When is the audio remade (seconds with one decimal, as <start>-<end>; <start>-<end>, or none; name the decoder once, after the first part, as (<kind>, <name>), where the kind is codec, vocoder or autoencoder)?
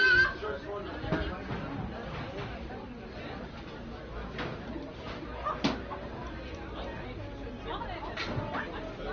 2.0-3.2 (vocoder, BigVGAN v2); 6.2-6.8